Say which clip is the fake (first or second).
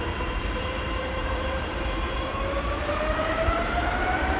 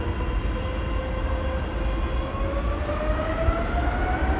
first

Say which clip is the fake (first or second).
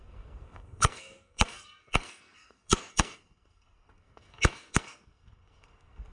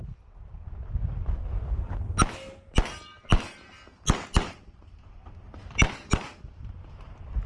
first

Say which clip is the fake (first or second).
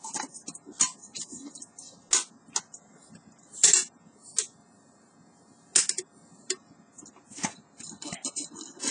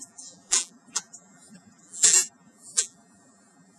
second